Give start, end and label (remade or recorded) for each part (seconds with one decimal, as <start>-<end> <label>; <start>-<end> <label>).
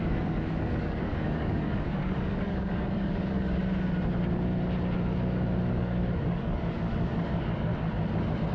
0.0-3.6 remade; 3.6-5.7 recorded; 5.7-7.7 remade; 7.7-8.5 recorded